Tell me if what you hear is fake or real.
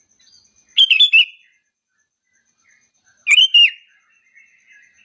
real